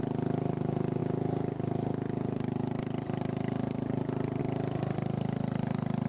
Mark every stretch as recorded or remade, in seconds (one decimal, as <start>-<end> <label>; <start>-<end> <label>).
0.0-6.1 recorded